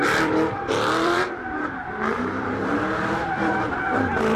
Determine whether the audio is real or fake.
fake